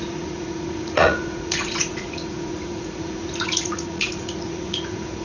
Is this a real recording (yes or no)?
no